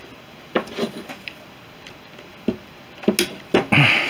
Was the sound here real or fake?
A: real